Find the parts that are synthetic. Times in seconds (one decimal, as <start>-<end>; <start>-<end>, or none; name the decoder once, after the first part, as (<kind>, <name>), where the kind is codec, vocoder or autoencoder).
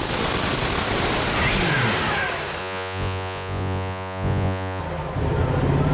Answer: 2.6-4.8 (vocoder, Vocos)